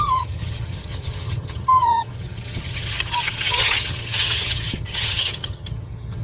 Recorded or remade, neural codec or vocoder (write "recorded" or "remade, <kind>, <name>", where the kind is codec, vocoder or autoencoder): remade, vocoder, HiFi-GAN